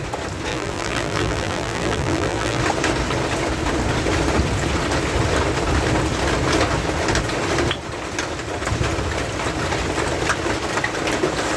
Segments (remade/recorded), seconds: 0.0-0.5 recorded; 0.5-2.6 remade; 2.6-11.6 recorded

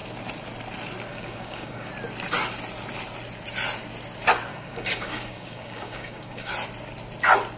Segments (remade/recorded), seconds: 0.0-1.1 recorded; 1.1-1.9 remade; 1.9-4.5 recorded; 4.5-6.5 remade; 6.5-7.6 recorded

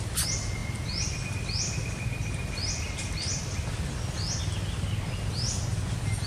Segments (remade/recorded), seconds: 0.0-6.3 recorded

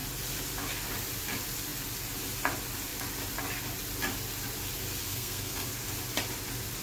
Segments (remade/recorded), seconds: 0.0-5.0 recorded; 5.0-5.7 remade; 5.7-6.8 recorded

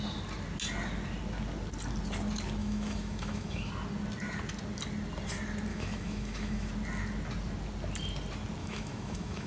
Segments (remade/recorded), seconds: 0.0-2.6 recorded; 2.6-3.7 remade; 3.7-5.7 recorded; 5.7-6.7 remade; 6.7-8.6 recorded; 8.6-9.5 remade

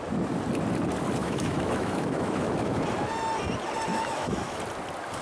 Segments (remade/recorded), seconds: 0.0-1.2 recorded; 1.2-2.8 remade; 2.8-3.9 recorded; 3.9-4.6 remade; 4.6-5.2 recorded